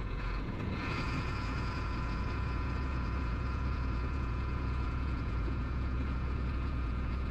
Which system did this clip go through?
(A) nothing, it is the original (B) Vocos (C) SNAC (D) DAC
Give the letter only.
B